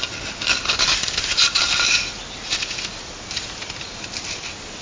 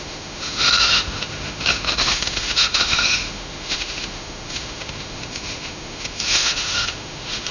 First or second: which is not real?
second